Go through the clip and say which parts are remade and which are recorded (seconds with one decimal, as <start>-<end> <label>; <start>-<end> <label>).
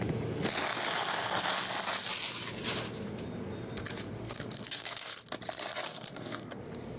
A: 0.0-4.2 recorded; 4.2-5.2 remade; 5.2-5.8 recorded; 5.8-6.6 remade; 6.6-7.0 recorded